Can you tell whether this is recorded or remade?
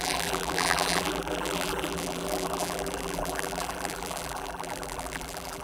remade